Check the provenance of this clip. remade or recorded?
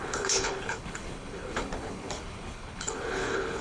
remade